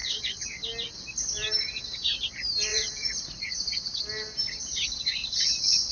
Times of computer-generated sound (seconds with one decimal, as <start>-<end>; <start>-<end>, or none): 2.7-4.0